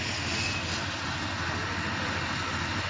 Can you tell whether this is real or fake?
real